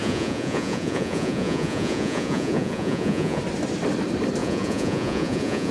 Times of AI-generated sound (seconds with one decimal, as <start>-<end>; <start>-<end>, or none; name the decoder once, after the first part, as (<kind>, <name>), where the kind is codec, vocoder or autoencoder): 0.0-3.4 (vocoder, Vocos); 4.4-5.7